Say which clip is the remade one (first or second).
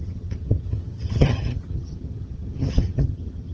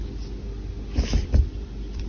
first